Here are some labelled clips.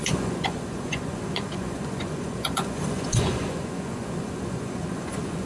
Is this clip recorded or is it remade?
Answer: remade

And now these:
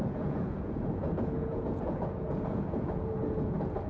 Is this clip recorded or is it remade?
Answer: remade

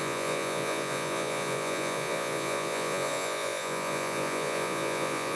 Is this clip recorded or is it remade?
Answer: remade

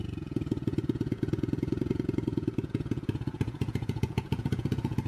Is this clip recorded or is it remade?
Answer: remade